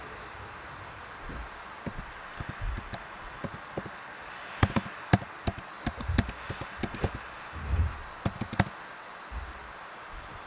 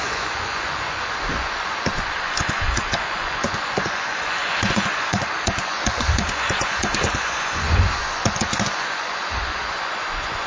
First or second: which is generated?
second